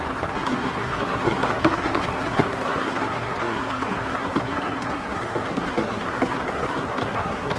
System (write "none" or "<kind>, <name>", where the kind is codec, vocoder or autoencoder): codec, SNAC